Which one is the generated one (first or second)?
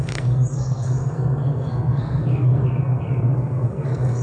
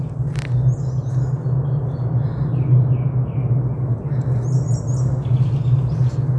first